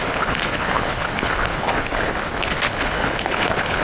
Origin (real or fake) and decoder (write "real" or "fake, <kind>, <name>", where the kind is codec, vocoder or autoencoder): fake, codec, HILCodec